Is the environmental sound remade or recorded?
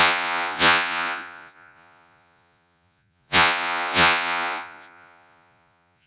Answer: remade